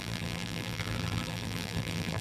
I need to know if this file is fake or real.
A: fake